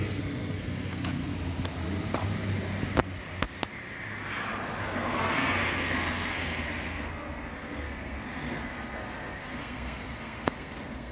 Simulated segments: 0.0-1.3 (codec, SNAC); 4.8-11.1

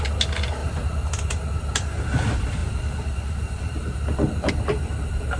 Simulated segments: 0.6-1.1 (vocoder, BigVGAN v2); 2.6-4.5

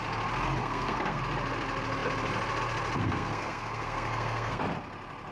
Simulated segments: 0.6-1.2 (codec, SNAC); 3.0-4.6